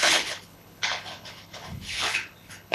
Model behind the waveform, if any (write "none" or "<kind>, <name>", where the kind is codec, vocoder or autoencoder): codec, HILCodec